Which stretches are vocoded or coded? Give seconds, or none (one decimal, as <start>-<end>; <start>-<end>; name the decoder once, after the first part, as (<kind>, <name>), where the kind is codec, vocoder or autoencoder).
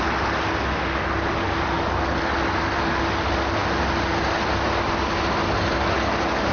none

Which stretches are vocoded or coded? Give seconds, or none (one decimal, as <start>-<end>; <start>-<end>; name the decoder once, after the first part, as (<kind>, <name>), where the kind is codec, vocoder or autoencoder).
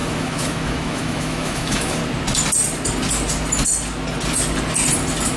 0.0-2.0 (autoencoder, DAC-VAE)